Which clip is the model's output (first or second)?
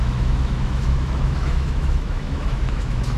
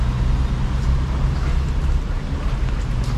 first